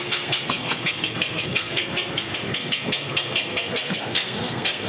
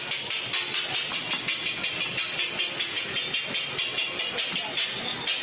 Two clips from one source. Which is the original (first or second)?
second